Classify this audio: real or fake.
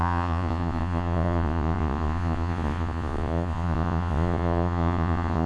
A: fake